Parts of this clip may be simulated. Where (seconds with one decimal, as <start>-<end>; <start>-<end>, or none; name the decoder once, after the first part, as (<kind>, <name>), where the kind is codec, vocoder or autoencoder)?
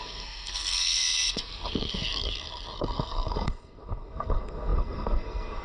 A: 0.0-5.6 (codec, SNAC)